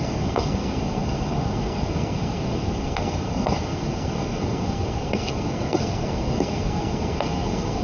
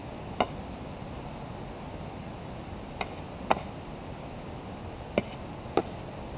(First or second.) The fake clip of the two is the first